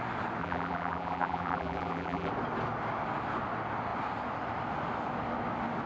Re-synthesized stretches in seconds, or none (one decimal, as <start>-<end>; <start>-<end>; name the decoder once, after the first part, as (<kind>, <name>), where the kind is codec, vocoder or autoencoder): 0.4-2.3 (vocoder, BigVGAN v2)